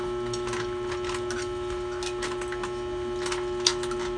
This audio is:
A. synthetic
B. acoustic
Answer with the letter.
B